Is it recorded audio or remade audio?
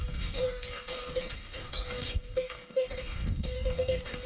remade